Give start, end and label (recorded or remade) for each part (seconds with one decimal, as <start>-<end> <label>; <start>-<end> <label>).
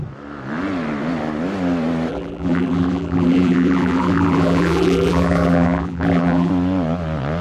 0.0-2.1 recorded; 2.1-6.5 remade; 6.5-7.4 recorded